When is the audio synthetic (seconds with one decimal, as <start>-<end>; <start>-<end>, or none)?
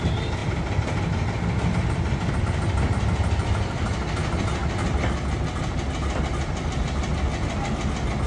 none